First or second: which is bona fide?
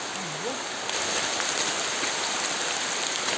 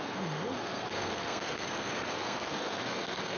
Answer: first